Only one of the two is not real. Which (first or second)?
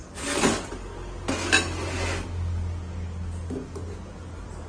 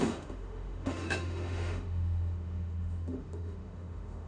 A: second